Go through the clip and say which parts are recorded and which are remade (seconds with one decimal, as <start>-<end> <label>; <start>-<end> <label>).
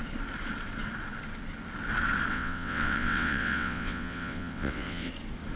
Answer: 0.0-2.3 recorded; 2.3-5.1 remade; 5.1-5.6 recorded